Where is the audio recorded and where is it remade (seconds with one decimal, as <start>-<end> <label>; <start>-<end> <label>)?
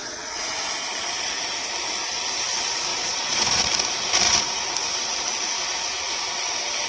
0.0-0.7 remade; 0.7-2.9 recorded; 2.9-3.6 remade; 3.6-5.9 recorded; 5.9-6.5 remade; 6.5-6.9 recorded